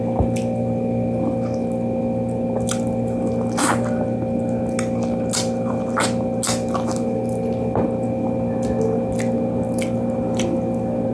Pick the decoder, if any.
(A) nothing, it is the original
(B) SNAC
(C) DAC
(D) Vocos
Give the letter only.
A